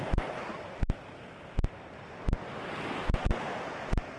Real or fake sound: real